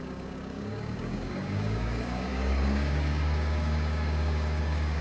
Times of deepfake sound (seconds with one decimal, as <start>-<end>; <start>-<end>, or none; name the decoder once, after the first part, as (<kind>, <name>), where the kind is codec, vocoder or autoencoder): 0.0-5.0 (codec, DAC)